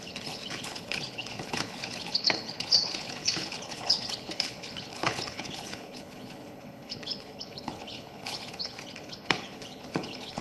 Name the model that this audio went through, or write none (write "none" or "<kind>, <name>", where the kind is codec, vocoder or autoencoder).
codec, HILCodec